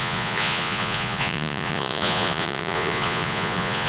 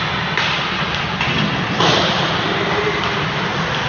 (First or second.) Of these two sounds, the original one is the second